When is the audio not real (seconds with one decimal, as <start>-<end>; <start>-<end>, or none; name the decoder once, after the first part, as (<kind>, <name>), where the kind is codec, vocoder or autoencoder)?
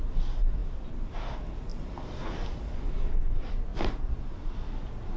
1.7-2.3 (vocoder, BigVGAN v2); 3.7-4.5